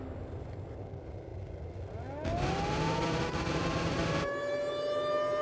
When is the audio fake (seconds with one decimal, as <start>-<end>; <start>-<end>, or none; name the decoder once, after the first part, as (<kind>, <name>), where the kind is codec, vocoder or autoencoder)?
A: none